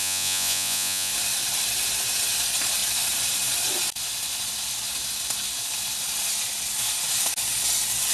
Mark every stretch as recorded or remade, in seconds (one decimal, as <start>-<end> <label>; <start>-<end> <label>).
0.0-1.1 remade; 1.1-8.1 recorded